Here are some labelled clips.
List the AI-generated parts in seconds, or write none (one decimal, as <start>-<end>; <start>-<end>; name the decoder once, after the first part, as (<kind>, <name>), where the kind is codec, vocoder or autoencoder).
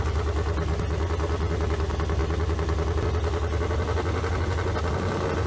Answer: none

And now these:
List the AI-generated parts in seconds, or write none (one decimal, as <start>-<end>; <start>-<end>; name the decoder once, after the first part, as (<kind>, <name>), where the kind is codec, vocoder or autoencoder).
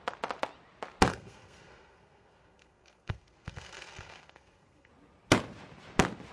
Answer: 1.1-4.9 (codec, SNAC)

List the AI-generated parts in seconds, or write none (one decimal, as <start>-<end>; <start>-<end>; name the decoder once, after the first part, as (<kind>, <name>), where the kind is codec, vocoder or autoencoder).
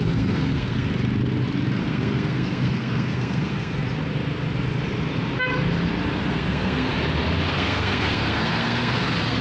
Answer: 0.0-0.9 (codec, SNAC); 1.8-3.8; 6.3-6.9; 7.5-9.4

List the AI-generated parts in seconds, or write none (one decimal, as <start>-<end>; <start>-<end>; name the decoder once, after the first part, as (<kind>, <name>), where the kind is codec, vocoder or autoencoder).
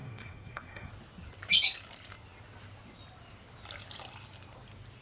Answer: 0.0-0.9 (codec, SNAC)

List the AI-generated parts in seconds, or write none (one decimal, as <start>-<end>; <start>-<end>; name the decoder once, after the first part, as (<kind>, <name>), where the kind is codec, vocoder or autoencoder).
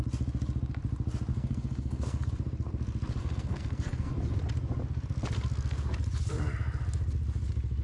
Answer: 1.3-2.3 (codec, SNAC); 3.2-4.1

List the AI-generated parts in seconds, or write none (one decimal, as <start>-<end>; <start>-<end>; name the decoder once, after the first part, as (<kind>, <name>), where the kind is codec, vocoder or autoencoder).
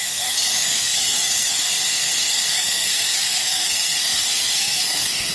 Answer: 0.0-5.3 (codec, SNAC)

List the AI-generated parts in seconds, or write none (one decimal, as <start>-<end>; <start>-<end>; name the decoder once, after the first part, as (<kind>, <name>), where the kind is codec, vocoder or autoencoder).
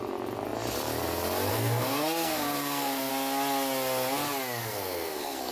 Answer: 1.5-3.1 (codec, SNAC); 4.6-5.5